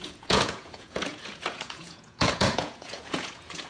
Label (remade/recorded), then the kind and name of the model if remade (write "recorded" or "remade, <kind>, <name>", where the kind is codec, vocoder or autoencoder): remade, vocoder, Vocos